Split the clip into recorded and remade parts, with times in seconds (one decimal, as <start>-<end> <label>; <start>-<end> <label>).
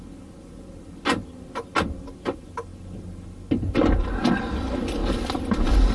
0.0-5.9 recorded